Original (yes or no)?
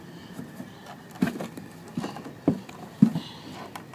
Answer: yes